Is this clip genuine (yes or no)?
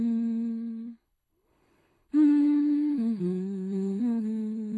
no